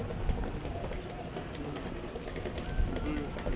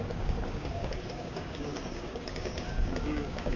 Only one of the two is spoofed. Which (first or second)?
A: second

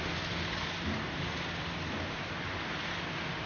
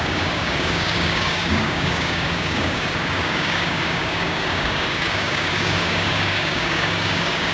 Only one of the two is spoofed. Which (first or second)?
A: second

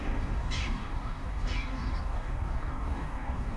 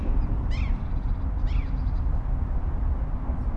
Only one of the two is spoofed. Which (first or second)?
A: first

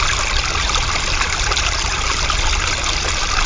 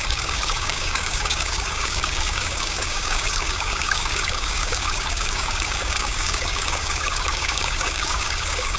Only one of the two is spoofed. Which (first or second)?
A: second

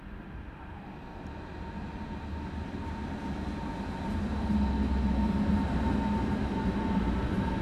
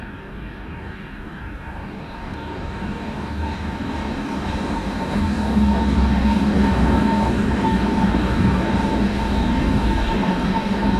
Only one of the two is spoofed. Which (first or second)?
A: second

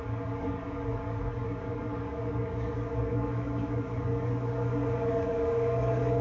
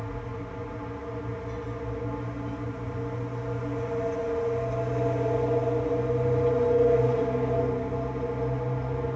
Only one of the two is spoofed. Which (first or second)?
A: first